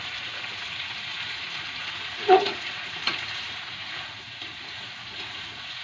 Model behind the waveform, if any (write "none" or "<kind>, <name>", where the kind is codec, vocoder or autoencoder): vocoder, Vocos